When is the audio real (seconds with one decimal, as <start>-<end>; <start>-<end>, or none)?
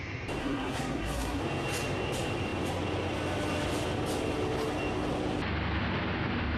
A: 0.0-0.4; 1.4-6.6